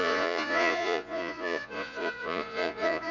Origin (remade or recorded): remade